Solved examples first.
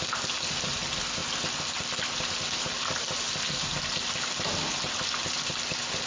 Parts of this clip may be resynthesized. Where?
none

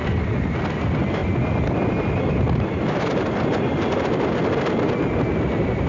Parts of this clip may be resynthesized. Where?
none

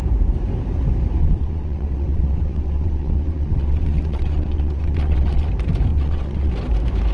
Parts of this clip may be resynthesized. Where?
1.2-5.5 (vocoder, WaveNeXt); 5.9-6.5

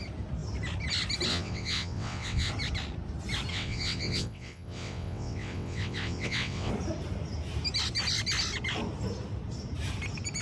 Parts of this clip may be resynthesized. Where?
1.3-2.5 (vocoder, WaveNeXt); 3.5-6.7